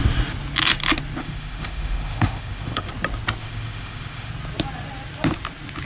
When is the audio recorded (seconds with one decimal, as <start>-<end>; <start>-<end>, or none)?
0.0-1.2; 2.9-3.4; 4.3-5.9